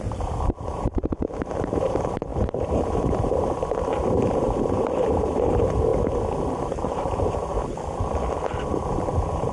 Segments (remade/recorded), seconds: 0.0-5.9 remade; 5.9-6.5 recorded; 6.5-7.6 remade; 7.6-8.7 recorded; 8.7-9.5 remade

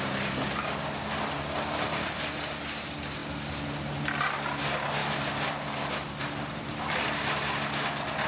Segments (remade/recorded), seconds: 0.0-5.0 recorded; 5.0-6.7 remade; 6.7-8.3 recorded